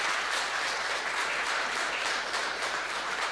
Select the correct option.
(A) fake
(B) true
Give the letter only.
A